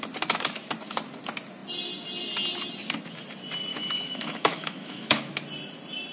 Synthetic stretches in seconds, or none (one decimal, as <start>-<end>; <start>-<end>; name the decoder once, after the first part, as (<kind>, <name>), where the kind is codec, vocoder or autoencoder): 3.7-5.3 (autoencoder, DAC-VAE)

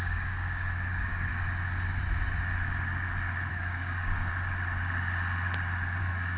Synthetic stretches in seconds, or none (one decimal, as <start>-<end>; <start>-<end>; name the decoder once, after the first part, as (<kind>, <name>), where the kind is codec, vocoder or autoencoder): 0.0-1.3 (codec, DAC); 3.5-4.3; 6.0-6.4

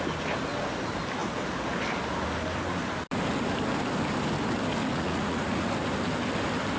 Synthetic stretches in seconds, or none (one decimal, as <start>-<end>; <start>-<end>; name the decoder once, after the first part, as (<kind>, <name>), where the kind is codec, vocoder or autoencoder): 4.9-5.7 (vocoder, Vocos)

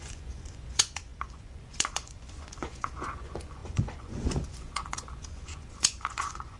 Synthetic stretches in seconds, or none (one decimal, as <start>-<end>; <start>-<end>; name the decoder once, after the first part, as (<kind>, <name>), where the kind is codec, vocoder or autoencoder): 0.0-6.6 (vocoder, Vocos)

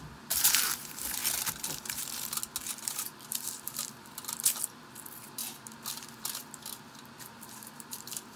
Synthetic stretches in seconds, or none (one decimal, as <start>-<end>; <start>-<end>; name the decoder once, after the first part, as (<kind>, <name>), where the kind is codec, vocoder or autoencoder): 0.0-1.2 (vocoder, BigVGAN v2); 2.8-5.4; 7.9-8.4

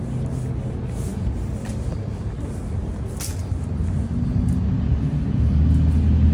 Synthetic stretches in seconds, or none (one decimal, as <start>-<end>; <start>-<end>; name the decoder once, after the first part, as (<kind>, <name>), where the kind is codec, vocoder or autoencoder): none